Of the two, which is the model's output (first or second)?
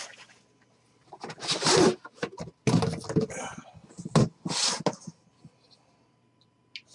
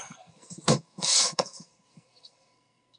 second